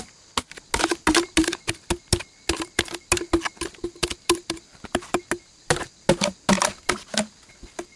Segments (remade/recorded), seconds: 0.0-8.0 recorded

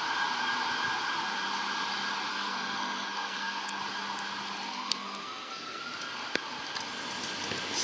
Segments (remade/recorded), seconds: 0.0-2.3 recorded; 2.3-3.8 remade; 3.8-4.7 recorded; 4.7-5.8 remade; 5.8-7.8 recorded

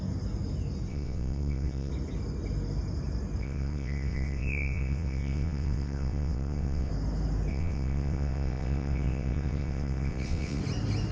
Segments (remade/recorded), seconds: 0.0-0.9 recorded; 0.9-1.9 remade; 1.9-3.4 recorded; 3.4-6.9 remade; 6.9-7.5 recorded; 7.5-10.6 remade; 10.6-11.1 recorded

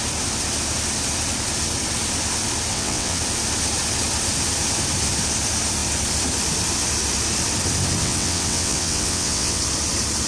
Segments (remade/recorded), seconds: 0.0-2.7 recorded; 2.7-3.2 remade; 3.2-8.0 recorded; 8.0-9.6 remade; 9.6-10.3 recorded

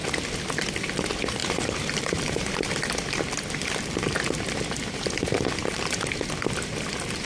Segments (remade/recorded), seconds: 0.0-1.4 recorded; 1.4-2.6 remade; 2.6-7.3 recorded

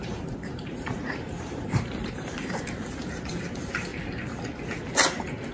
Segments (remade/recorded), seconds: 0.0-3.3 remade; 3.3-5.5 recorded

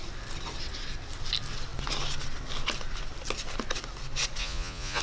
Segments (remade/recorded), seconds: 0.0-4.4 recorded; 4.4-5.0 remade

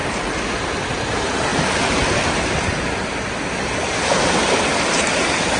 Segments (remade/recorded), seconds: 0.0-5.6 recorded